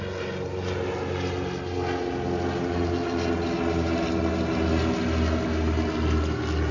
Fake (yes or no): no